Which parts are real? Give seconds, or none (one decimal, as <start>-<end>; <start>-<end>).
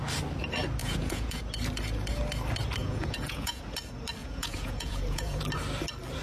0.0-0.8; 1.4-2.8; 3.6-4.2; 5.4-6.2